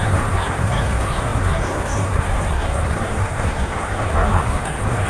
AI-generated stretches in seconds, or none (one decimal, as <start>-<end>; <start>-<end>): 0.0-5.1